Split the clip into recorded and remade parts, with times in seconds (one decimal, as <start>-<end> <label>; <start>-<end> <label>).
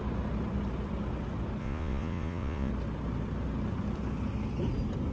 0.0-1.6 recorded; 1.6-2.7 remade; 2.7-5.1 recorded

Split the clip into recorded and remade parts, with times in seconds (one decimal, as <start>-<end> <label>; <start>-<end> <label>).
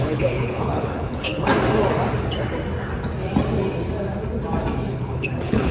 0.0-1.5 remade; 1.5-4.9 recorded; 4.9-5.7 remade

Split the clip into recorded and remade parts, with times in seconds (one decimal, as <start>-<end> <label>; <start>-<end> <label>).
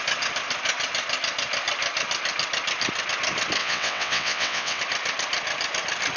0.0-3.6 recorded; 3.6-4.8 remade; 4.8-6.2 recorded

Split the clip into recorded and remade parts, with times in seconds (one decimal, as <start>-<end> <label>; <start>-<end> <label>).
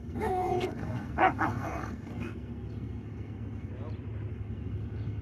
0.0-3.7 remade; 3.7-4.3 recorded; 4.3-5.2 remade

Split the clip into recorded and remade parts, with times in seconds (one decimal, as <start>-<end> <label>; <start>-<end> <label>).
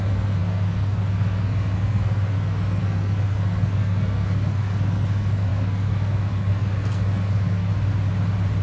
0.0-7.7 remade; 7.7-8.6 recorded